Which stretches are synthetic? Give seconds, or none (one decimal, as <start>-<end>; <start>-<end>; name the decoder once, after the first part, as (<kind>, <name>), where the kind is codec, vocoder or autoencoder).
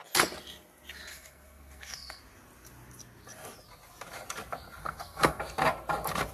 1.1-2.2 (codec, SNAC); 4.8-5.4